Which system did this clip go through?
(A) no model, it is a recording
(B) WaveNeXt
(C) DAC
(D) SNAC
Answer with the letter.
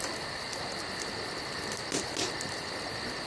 A